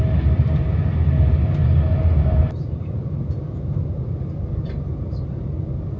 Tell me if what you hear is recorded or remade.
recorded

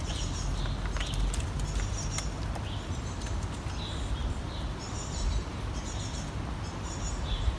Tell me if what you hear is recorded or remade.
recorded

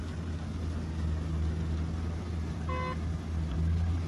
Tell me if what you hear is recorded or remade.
recorded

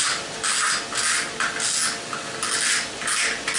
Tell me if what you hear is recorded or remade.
recorded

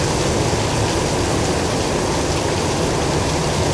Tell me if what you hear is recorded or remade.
recorded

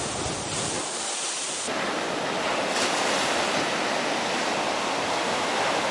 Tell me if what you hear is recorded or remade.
recorded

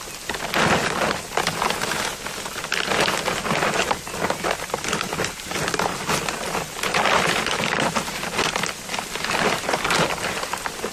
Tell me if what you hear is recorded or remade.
recorded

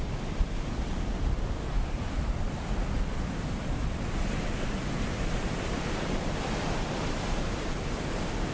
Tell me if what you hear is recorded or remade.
recorded